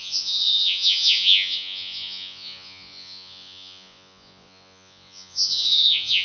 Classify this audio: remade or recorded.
remade